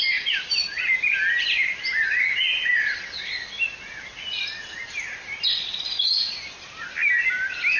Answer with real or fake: real